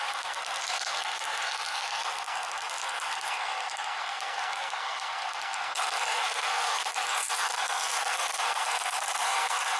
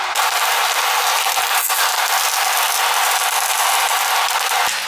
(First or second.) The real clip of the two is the second